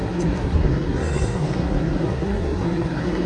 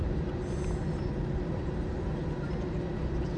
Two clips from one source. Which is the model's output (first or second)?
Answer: first